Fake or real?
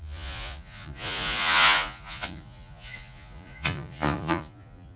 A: fake